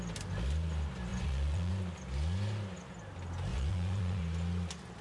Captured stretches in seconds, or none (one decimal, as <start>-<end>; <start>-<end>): 0.0-1.1; 1.7-3.5; 4.2-5.0